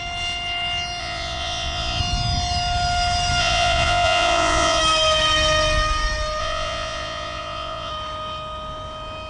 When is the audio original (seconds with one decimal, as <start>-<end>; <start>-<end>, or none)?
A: 0.0-1.0; 2.0-3.4; 4.8-6.4; 7.9-9.3